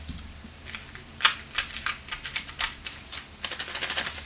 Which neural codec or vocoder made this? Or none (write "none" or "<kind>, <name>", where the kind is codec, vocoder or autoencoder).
none